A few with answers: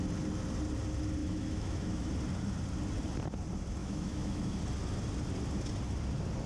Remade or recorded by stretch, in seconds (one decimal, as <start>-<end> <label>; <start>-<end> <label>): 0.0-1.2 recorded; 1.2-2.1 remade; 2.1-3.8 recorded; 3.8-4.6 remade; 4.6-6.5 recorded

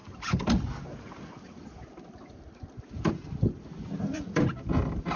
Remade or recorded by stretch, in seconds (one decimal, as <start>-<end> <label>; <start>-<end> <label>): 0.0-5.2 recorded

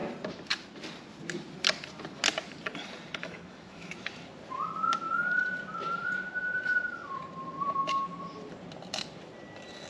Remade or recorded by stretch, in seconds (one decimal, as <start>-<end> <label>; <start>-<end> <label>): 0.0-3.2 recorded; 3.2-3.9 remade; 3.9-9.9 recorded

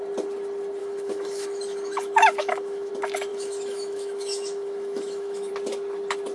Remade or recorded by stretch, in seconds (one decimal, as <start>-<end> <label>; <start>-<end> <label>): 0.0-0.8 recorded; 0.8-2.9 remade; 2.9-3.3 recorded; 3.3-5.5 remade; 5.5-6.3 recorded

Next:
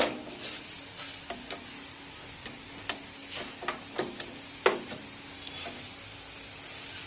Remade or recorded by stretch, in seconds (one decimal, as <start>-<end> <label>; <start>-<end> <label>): 0.0-7.1 recorded

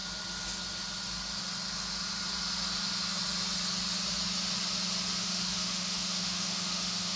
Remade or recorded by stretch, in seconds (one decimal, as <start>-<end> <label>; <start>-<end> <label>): 0.0-5.2 recorded; 5.2-7.2 remade